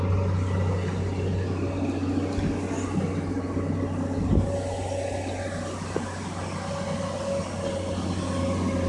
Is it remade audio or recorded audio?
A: recorded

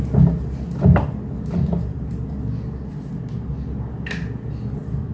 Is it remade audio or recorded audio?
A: recorded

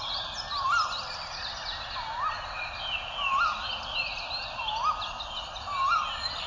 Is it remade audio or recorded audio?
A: recorded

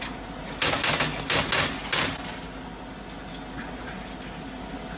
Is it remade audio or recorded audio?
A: recorded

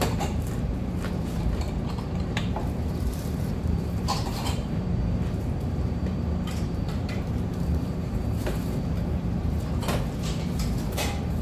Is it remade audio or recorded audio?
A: remade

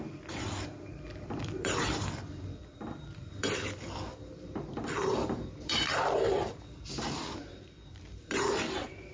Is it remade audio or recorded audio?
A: remade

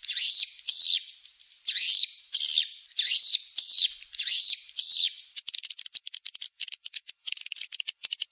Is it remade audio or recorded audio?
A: remade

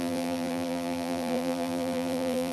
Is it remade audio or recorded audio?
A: remade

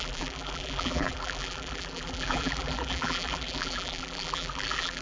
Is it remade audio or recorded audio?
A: remade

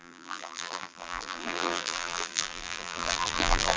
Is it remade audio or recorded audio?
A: remade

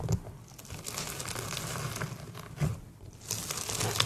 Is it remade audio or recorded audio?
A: recorded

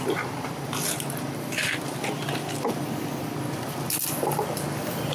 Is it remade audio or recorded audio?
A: recorded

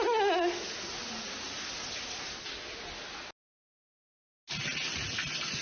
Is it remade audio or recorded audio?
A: recorded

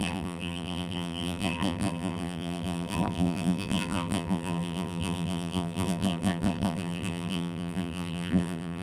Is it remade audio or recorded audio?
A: remade